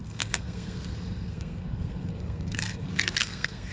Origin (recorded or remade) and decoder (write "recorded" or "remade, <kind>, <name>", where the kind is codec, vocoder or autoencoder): remade, codec, SNAC